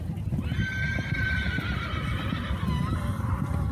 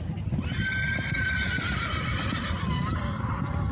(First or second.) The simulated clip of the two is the second